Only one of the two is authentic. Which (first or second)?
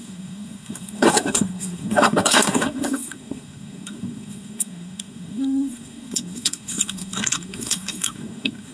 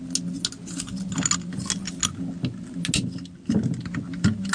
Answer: second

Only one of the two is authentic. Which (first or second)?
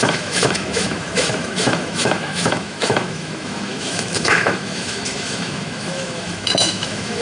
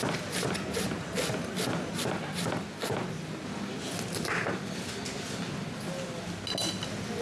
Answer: second